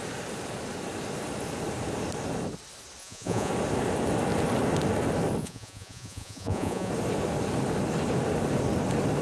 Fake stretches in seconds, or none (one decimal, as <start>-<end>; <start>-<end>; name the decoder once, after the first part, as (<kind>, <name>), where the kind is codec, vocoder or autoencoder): 3.0-3.5 (vocoder, Vocos); 5.4-6.9